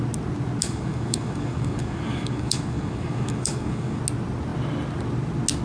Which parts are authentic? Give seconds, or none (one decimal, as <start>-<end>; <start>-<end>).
0.0-0.6; 4.0-5.6